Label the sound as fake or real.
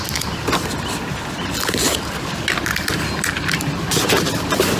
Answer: real